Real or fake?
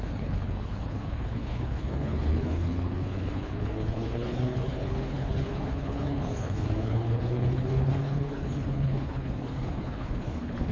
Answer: fake